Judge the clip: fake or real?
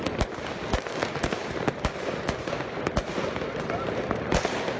real